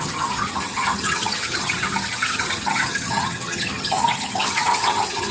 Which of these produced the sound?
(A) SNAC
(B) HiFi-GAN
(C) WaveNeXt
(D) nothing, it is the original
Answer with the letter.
B